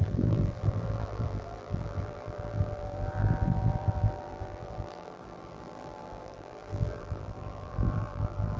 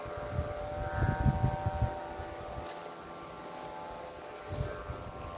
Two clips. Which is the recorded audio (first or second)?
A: second